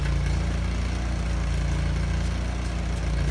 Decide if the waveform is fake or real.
real